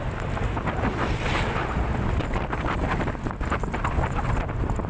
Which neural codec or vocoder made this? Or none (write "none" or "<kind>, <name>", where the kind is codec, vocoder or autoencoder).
none